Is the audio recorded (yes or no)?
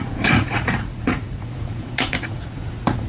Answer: no